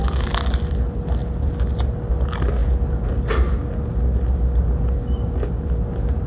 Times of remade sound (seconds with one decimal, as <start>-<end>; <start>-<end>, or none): none